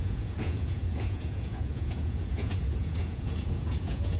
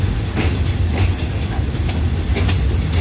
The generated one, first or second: first